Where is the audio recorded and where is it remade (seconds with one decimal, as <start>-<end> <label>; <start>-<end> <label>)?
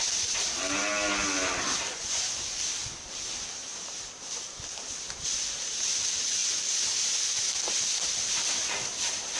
0.0-1.9 recorded; 1.9-2.6 remade; 2.6-9.4 recorded